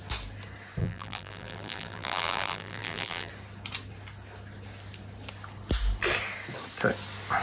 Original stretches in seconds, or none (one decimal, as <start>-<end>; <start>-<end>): 0.0-0.8; 3.3-7.4